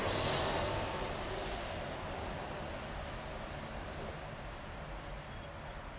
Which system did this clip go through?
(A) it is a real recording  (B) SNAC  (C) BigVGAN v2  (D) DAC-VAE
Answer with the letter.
A